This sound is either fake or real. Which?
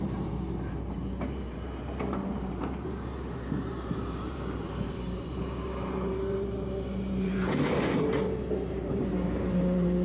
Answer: fake